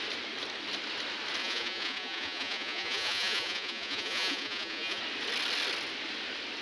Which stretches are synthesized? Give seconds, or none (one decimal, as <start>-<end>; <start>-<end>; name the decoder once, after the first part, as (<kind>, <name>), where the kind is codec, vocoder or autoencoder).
1.4-5.0 (vocoder, Vocos)